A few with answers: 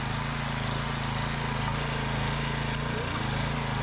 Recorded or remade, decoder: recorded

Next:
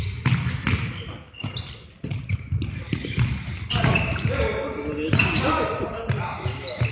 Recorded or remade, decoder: recorded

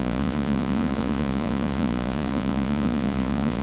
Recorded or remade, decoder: remade, vocoder, Vocos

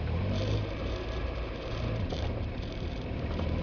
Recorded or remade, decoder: remade, vocoder, BigVGAN v2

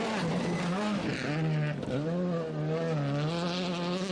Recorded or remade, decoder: recorded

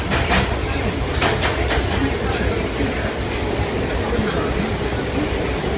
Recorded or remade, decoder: recorded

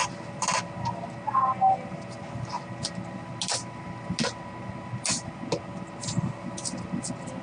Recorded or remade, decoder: recorded